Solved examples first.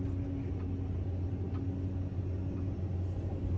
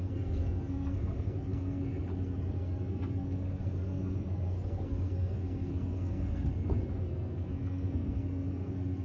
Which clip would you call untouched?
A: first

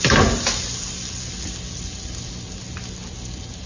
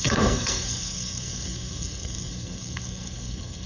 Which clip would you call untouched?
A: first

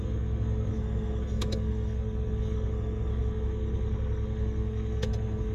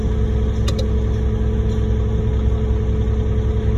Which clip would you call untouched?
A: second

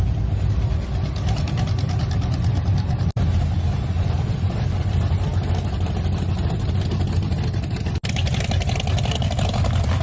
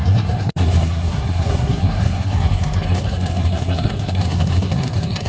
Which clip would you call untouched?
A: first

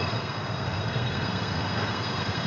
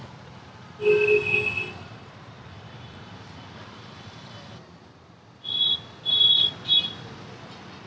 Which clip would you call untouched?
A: second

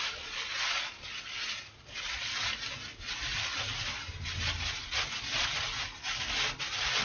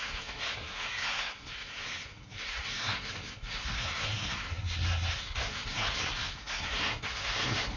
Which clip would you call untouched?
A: first